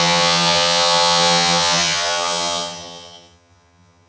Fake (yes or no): yes